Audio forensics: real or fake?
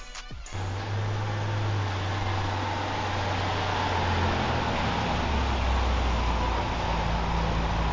real